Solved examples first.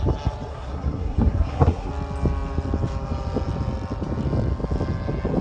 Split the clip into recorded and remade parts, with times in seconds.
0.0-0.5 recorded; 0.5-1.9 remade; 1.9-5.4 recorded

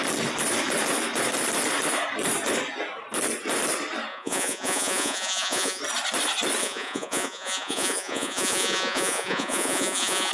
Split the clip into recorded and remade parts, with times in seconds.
0.0-4.1 recorded; 4.1-5.8 remade; 5.8-6.6 recorded; 6.6-10.3 remade

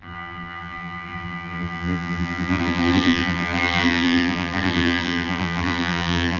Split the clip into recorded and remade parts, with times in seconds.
0.0-6.4 remade

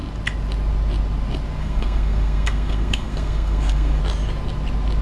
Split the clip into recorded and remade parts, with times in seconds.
0.0-1.6 recorded; 1.6-4.0 remade; 4.0-5.0 recorded

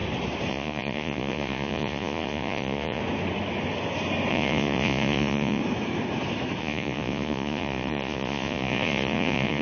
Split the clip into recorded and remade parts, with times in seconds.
0.0-0.5 recorded; 0.5-3.0 remade; 3.0-4.3 recorded; 4.3-5.6 remade; 5.6-6.6 recorded; 6.6-9.6 remade

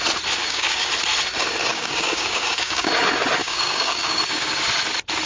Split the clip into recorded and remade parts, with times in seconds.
0.0-0.4 recorded; 0.4-0.9 remade; 0.9-1.7 recorded; 1.7-2.9 remade; 2.9-3.4 recorded; 3.4-4.2 remade; 4.2-5.3 recorded